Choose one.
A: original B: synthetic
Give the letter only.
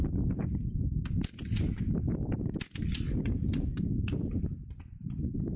A